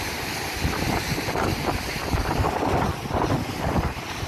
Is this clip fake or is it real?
real